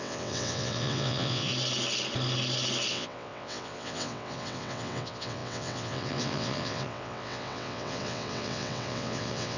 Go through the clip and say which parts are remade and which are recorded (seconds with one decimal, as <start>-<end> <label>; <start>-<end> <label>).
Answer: 0.0-1.5 remade; 1.5-2.9 recorded; 2.9-9.6 remade